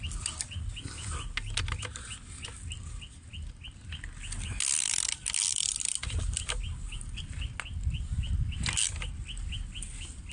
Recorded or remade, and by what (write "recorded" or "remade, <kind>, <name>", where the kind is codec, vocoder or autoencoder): recorded